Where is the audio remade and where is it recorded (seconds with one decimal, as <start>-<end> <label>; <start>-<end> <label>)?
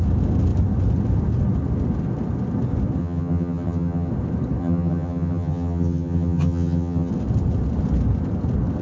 0.0-3.0 recorded; 3.0-4.1 remade; 4.1-4.6 recorded; 4.6-7.1 remade; 7.1-8.8 recorded